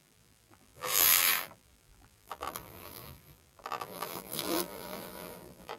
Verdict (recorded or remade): remade